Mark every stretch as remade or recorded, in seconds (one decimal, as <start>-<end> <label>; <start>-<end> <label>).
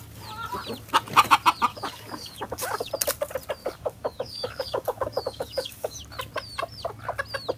0.0-1.7 recorded; 1.7-2.9 remade; 2.9-3.6 recorded; 3.6-6.0 remade; 6.0-7.6 recorded